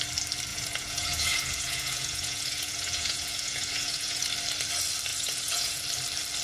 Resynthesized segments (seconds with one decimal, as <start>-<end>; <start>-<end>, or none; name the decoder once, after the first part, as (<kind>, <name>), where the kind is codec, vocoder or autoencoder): 0.5-4.3 (vocoder, Vocos); 5.1-5.8